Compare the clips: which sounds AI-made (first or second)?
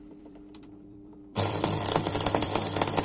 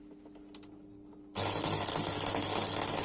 first